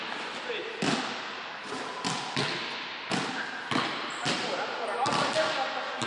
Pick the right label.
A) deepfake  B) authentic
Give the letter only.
B